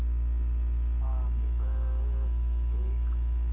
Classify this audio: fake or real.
real